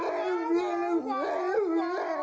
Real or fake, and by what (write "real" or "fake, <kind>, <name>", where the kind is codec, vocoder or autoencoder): real